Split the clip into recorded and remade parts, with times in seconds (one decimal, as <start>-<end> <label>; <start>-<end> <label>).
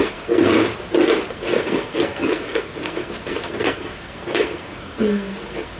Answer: 0.0-0.6 remade; 0.6-1.3 recorded; 1.3-5.8 remade